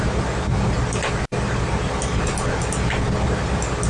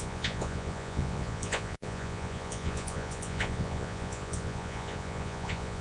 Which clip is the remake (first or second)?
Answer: second